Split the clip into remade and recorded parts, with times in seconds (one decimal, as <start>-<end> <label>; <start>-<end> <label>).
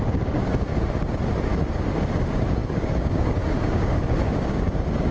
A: 0.0-0.7 remade; 0.7-1.4 recorded; 1.4-5.1 remade